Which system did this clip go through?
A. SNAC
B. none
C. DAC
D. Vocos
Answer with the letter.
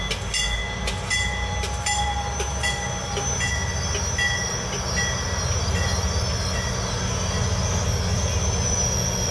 B